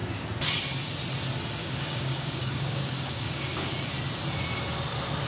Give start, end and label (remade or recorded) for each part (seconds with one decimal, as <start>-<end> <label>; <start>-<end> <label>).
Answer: 0.0-1.6 recorded; 1.6-3.9 remade; 3.9-5.3 recorded

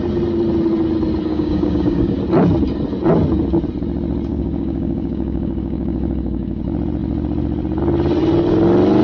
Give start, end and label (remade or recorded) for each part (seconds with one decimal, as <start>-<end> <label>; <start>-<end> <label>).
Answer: 0.0-1.3 recorded; 1.3-2.2 remade; 2.2-4.3 recorded; 4.3-6.6 remade; 6.6-9.0 recorded

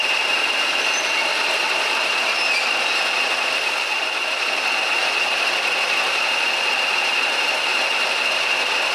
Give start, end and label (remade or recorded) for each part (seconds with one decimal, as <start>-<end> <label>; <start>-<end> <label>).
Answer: 0.0-8.9 recorded

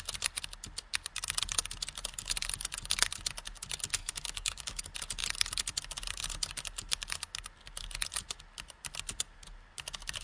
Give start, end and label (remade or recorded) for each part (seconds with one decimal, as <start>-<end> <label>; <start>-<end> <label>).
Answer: 0.0-4.0 recorded; 4.0-4.8 remade; 4.8-10.2 recorded